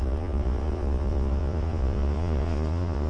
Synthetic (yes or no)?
yes